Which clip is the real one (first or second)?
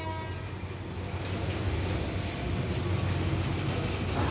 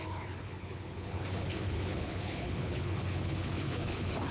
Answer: first